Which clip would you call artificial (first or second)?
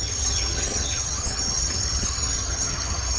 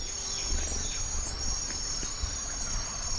first